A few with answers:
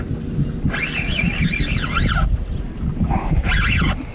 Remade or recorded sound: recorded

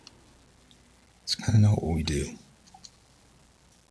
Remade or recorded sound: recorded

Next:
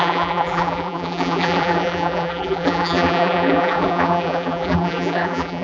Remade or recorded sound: remade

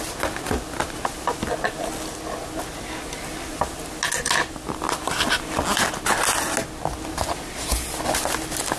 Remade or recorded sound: recorded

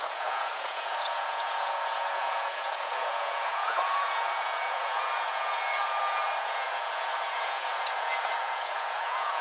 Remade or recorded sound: remade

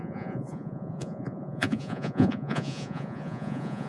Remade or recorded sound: remade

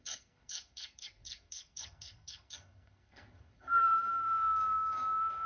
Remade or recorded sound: remade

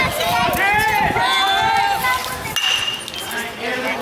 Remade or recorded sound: recorded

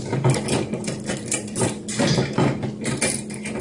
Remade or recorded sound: recorded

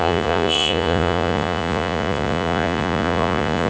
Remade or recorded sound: remade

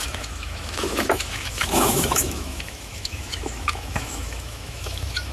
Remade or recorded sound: remade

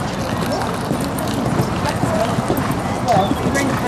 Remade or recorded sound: recorded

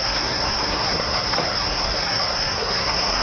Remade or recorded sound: remade